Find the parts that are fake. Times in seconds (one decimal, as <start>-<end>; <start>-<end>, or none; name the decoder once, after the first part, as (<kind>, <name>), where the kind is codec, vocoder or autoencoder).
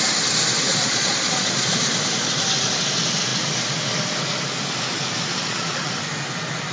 0.7-1.8 (vocoder, Vocos); 5.3-5.9